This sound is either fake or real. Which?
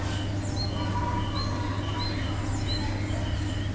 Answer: real